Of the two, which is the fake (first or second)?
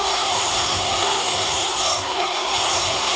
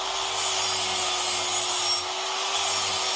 first